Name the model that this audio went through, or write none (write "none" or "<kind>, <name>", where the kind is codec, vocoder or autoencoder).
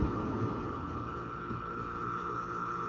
codec, HILCodec